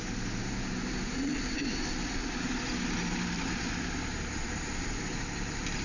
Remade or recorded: recorded